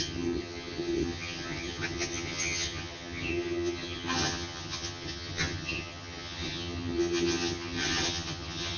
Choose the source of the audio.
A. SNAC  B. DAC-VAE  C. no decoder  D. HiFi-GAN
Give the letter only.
D